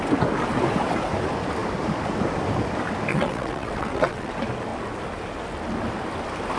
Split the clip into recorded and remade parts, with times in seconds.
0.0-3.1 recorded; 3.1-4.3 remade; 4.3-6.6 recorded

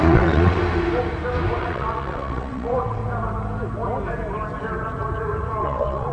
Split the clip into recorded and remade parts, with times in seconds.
0.0-0.6 remade; 0.6-1.6 recorded; 1.6-3.0 remade; 3.0-5.6 recorded; 5.6-6.1 remade

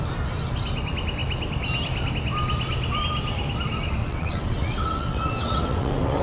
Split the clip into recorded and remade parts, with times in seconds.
0.0-4.0 recorded; 4.0-6.2 remade

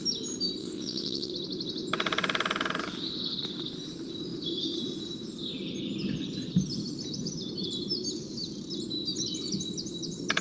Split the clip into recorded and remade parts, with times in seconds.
0.0-0.6 recorded; 0.6-1.3 remade; 1.3-10.4 recorded

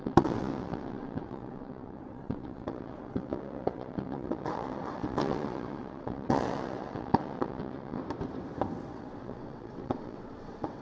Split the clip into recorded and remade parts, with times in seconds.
0.0-8.0 remade; 8.0-8.8 recorded; 8.8-10.8 remade

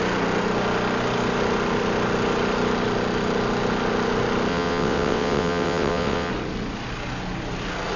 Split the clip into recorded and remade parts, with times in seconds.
0.0-4.5 recorded; 4.5-6.3 remade; 6.3-8.0 recorded

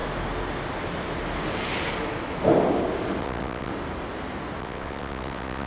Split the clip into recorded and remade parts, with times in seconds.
0.0-3.2 recorded; 3.2-3.7 remade; 3.7-4.6 recorded; 4.6-5.7 remade